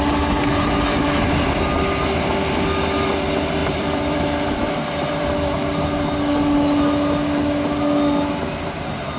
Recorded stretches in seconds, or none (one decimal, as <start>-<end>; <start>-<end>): 0.0-3.6; 5.5-9.2